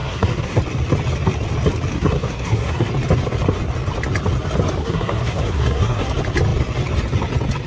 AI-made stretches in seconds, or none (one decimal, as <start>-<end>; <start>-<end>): 0.0-0.6; 1.9-2.9; 4.8-6.1